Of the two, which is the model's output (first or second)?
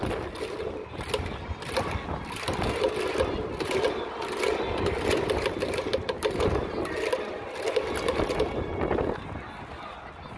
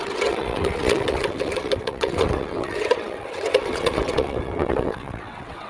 second